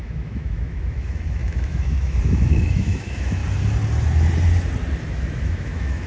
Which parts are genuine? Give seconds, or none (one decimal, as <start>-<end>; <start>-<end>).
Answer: 3.4-5.1